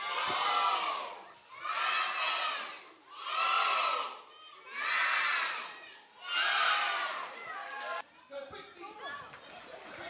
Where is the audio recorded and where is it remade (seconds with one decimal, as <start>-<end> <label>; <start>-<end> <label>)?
0.0-10.1 recorded